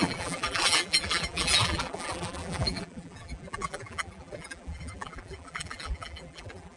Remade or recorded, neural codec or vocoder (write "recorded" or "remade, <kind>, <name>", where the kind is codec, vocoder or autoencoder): remade, vocoder, BigVGAN v2